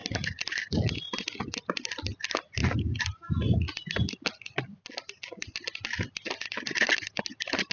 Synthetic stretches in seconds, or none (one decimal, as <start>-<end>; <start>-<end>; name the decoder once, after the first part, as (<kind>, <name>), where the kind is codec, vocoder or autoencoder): none